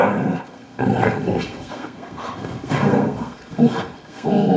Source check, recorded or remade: remade